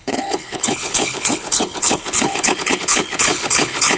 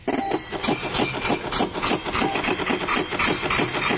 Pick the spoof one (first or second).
first